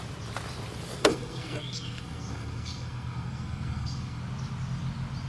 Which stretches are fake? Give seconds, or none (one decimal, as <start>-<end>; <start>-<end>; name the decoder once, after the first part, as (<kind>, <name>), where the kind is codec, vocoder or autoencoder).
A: 1.0-4.2 (codec, SNAC)